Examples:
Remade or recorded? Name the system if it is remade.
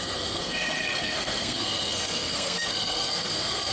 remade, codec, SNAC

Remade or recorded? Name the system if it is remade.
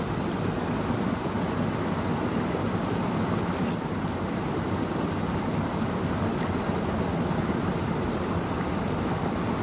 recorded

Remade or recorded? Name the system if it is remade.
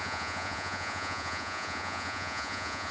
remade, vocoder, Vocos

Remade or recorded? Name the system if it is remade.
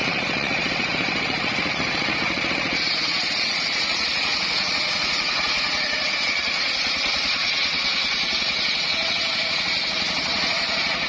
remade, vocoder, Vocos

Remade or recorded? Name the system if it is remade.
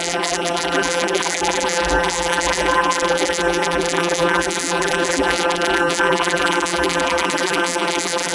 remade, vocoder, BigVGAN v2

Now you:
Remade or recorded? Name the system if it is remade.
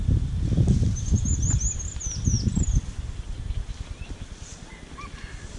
recorded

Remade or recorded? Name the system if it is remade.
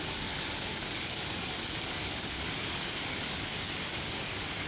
remade, codec, DAC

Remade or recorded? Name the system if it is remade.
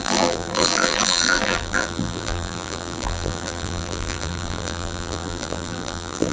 remade, vocoder, BigVGAN v2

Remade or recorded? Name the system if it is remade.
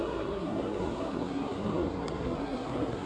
remade, codec, SNAC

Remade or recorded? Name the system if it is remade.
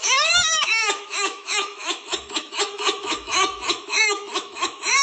remade, autoencoder, DAC-VAE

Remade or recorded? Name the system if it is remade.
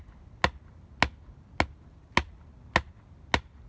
recorded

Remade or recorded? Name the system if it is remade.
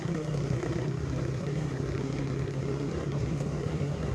remade, codec, SNAC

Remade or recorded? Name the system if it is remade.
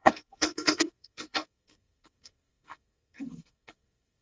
remade, codec, SNAC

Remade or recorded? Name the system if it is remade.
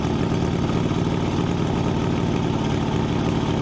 recorded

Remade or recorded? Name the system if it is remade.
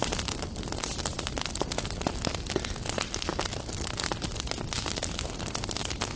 recorded